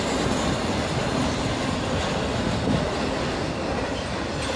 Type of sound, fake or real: real